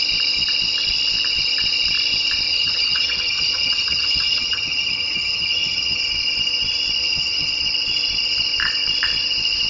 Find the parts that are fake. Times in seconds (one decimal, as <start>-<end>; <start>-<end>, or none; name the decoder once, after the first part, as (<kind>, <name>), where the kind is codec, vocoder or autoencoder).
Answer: 2.5-6.0 (vocoder, HiFi-GAN); 7.0-7.5